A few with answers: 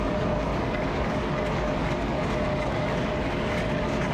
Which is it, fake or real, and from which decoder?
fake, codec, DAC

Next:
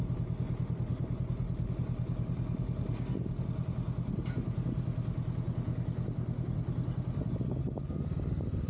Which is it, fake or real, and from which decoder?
real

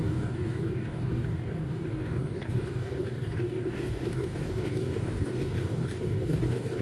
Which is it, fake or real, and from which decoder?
fake, codec, DAC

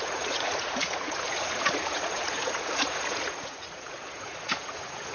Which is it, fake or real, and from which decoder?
fake, vocoder, Vocos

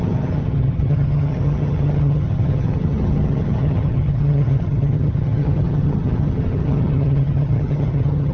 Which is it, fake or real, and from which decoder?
fake, vocoder, HiFi-GAN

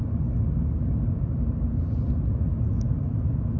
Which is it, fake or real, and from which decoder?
real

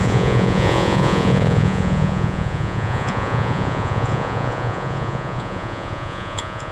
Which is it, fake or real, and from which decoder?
fake, vocoder, Vocos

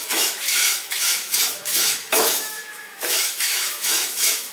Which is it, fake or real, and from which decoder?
fake, autoencoder, DAC-VAE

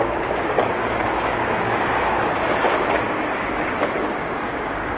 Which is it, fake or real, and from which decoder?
fake, codec, DAC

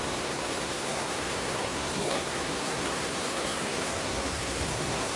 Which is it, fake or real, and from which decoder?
fake, codec, SNAC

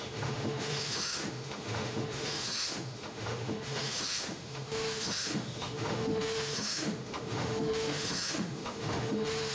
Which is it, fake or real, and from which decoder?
fake, autoencoder, DAC-VAE